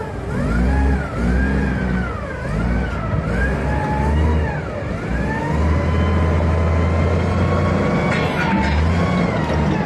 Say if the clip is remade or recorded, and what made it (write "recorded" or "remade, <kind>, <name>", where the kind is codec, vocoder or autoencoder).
recorded